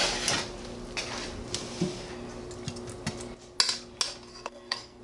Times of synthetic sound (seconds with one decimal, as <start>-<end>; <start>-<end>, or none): 4.3-5.0

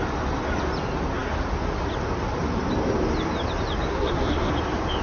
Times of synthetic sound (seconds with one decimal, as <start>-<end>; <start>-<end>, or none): 3.9-4.5